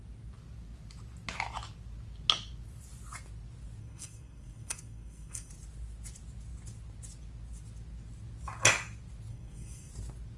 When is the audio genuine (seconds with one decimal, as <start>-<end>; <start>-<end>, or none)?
0.0-3.8; 5.5-9.3; 9.9-10.4